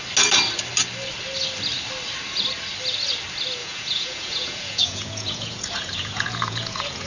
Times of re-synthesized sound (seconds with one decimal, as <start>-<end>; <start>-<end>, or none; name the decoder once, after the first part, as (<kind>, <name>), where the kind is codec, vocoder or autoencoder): 3.6-7.1 (vocoder, Vocos)